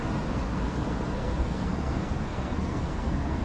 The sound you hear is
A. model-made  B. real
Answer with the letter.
A